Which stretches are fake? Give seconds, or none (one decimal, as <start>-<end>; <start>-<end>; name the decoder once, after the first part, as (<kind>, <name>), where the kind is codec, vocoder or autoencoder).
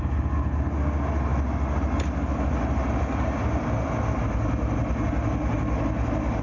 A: none